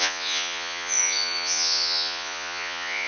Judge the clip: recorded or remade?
remade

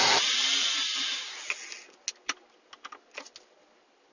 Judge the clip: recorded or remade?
recorded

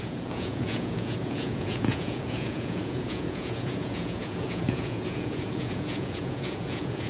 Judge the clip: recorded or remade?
remade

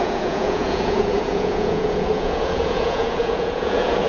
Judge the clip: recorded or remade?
remade